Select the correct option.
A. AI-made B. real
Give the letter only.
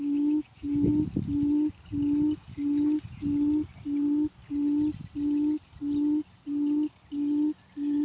B